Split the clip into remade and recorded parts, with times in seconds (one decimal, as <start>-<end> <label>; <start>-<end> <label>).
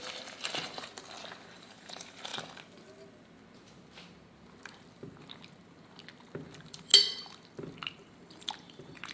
0.0-0.9 remade; 0.9-1.5 recorded; 1.5-2.3 remade; 2.3-6.5 recorded; 6.5-6.9 remade; 6.9-7.9 recorded; 7.9-9.1 remade